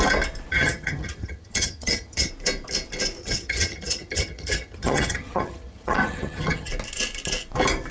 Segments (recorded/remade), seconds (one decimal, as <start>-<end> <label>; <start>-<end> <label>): 0.0-0.5 recorded; 0.5-2.3 remade; 2.3-3.2 recorded; 3.2-6.7 remade; 6.7-7.9 recorded